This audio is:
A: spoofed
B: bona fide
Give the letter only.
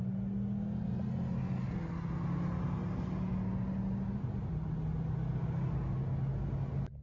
B